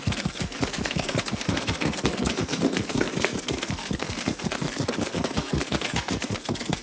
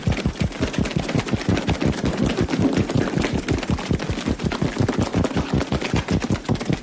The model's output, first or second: first